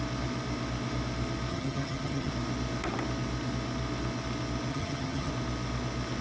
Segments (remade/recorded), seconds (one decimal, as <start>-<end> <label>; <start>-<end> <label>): 0.0-1.5 recorded; 1.5-2.3 remade; 2.3-4.7 recorded; 4.7-5.3 remade; 5.3-6.2 recorded